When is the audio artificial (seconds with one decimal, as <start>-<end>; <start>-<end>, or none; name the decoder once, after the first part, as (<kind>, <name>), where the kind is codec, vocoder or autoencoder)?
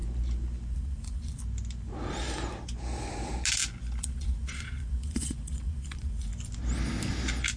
0.7-1.4 (vocoder, Vocos); 4.0-6.3